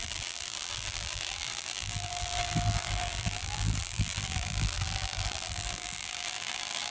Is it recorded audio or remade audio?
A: remade